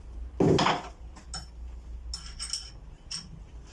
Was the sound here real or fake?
real